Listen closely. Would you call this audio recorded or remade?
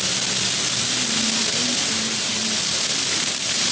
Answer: recorded